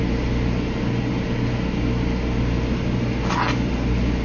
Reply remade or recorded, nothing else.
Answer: recorded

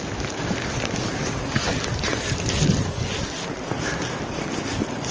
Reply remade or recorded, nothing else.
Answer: recorded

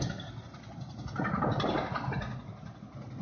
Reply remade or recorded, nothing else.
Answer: recorded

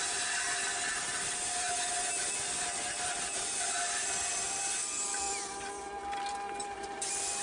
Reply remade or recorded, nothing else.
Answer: recorded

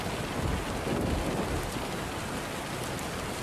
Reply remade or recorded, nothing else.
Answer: recorded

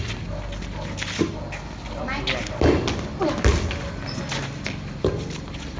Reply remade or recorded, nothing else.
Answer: recorded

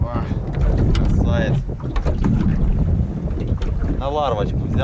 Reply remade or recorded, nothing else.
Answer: recorded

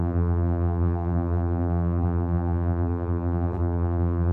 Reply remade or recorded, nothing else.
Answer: remade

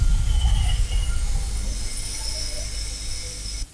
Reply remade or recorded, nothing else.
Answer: recorded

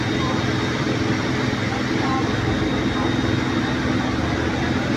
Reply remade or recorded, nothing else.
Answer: recorded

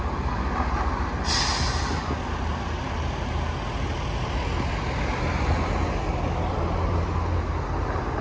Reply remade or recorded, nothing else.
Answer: recorded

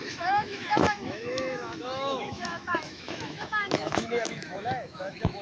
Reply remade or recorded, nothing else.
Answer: remade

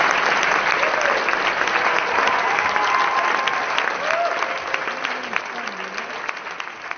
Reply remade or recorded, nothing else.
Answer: recorded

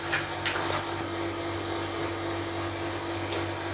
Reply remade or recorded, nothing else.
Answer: recorded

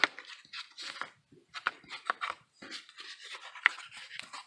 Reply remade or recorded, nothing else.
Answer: recorded